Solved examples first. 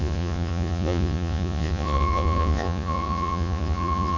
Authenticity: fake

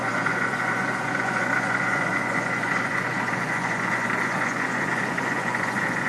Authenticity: fake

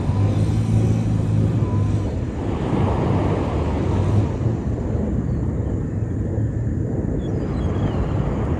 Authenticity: real